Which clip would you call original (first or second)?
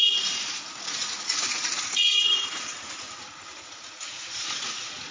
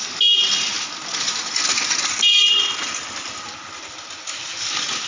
second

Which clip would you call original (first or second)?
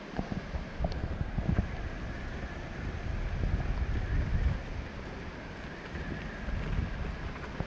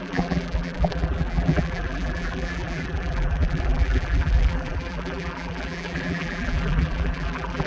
first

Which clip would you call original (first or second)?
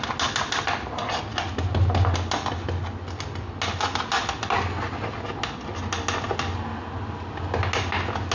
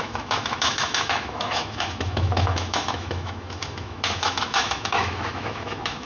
first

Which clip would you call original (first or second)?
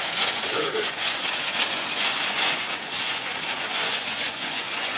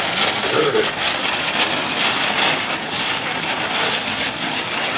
second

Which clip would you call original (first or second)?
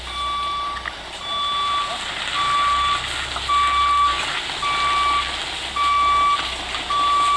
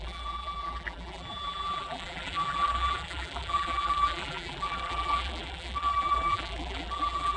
first